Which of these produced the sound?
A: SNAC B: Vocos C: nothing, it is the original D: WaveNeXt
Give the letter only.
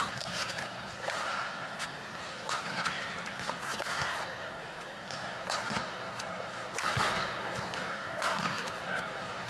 A